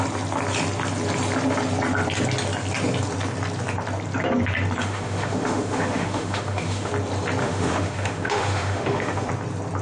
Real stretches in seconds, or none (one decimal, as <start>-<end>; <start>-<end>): 0.0-4.8; 6.9-7.4; 9.3-9.8